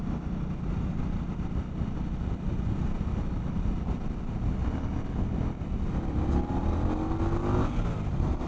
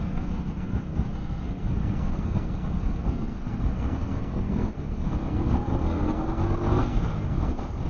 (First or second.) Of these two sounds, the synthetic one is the second